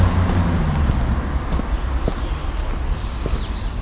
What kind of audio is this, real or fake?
real